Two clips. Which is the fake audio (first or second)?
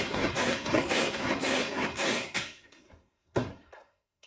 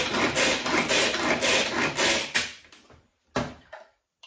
first